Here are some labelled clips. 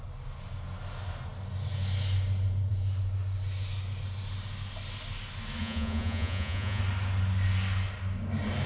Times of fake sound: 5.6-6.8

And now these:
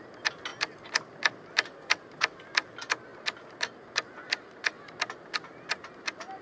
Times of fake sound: none

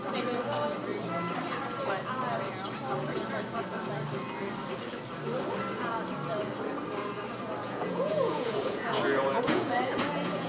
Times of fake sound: 7.6-10.5

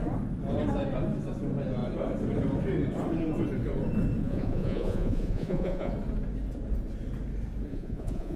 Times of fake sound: 4.2-5.9; 7.7-8.4

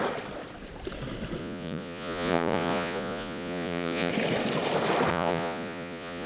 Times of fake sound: 1.4-4.1; 5.1-6.3

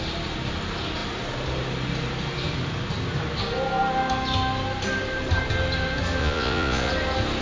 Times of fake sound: 6.2-6.9

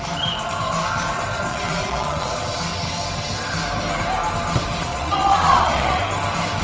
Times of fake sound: 1.5-2.3; 4.9-6.0